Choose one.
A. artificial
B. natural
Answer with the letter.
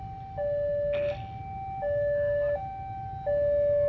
B